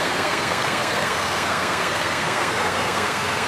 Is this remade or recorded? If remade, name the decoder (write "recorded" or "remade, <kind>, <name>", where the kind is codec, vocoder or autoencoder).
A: remade, codec, SNAC